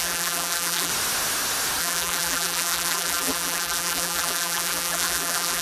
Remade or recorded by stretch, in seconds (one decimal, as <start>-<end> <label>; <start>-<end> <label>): 0.0-0.9 remade; 0.9-1.8 recorded; 1.8-5.6 remade